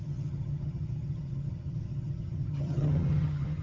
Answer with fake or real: fake